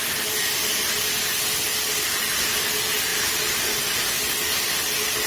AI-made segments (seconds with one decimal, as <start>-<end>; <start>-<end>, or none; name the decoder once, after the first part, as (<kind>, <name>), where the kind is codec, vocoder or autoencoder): 1.7-2.2 (vocoder, BigVGAN v2)

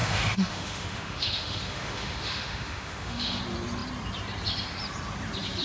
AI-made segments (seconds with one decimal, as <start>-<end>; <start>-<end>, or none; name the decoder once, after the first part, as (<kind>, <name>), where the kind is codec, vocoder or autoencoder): 0.0-3.4 (autoencoder, DAC-VAE)

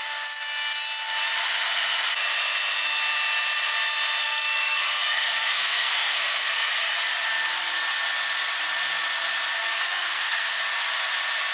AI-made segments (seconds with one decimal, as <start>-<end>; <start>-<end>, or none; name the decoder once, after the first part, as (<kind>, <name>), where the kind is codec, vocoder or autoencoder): 4.2-6.7 (codec, SNAC); 9.6-10.6

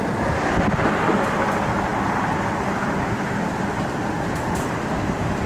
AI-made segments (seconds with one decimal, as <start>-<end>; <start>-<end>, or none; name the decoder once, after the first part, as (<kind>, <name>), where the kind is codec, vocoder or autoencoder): none

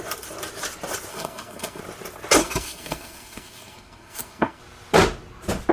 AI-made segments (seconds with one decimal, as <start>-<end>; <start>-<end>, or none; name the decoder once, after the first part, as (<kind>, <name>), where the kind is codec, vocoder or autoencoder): 1.1-1.8 (codec, SNAC); 2.4-4.6

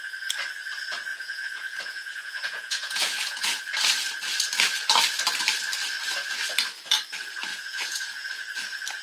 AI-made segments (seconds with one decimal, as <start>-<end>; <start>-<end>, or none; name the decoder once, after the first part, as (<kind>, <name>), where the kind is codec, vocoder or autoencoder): 1.1-3.6 (vocoder, Vocos); 7.5-8.3

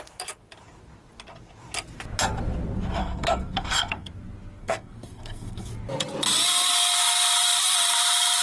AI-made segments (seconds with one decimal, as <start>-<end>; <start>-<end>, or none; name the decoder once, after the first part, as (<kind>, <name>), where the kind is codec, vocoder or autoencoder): 3.0-4.1 (codec, SNAC); 4.6-5.7

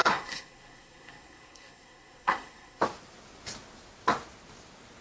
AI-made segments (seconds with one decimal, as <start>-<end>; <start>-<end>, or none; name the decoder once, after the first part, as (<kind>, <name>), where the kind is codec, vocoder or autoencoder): 0.0-2.8 (codec, SNAC)